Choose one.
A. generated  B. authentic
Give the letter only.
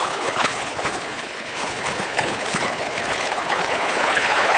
A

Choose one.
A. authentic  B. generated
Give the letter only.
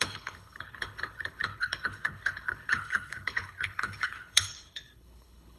B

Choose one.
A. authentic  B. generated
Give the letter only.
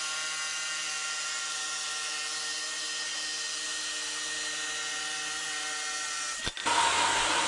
A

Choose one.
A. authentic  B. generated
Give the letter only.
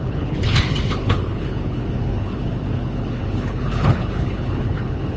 B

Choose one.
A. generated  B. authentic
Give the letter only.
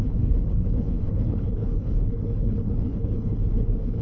A